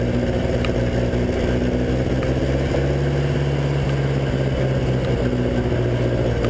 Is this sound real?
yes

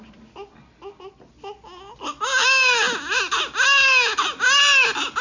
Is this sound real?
yes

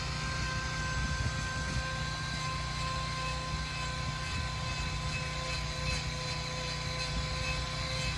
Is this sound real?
yes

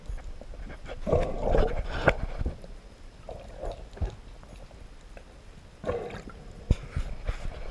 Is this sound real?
yes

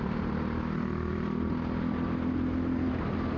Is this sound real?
yes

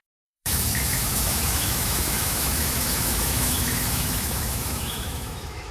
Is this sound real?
no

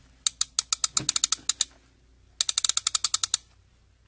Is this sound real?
yes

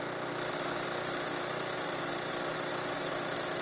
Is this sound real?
yes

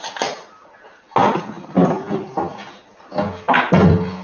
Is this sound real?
yes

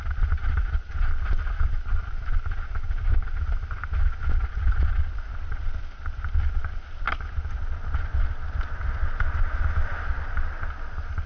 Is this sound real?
yes